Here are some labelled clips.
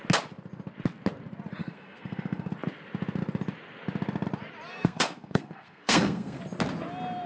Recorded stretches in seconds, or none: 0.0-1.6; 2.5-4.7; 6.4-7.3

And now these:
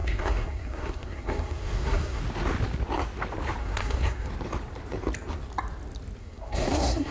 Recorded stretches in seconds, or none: 2.2-3.6; 4.3-6.2

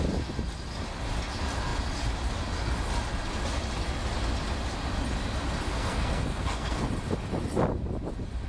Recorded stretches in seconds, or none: 0.0-5.7; 6.8-8.5